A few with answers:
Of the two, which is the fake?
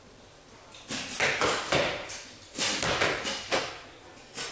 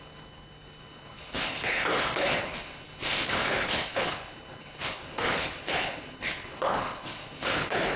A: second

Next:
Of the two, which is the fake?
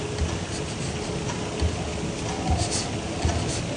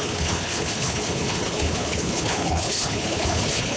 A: second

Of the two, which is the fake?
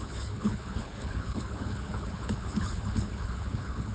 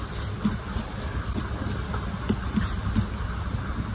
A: first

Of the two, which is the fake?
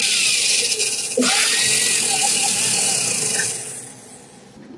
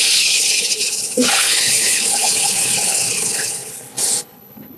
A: second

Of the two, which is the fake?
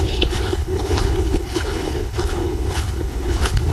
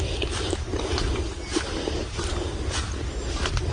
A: first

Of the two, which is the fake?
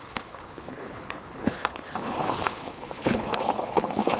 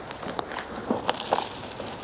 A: first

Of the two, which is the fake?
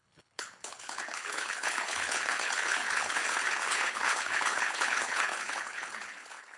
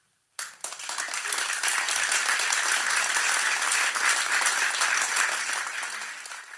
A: first